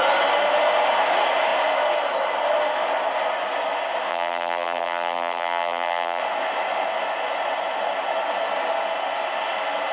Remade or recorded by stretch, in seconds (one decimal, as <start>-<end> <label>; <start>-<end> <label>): 0.0-4.1 recorded; 4.1-6.2 remade; 6.2-9.9 recorded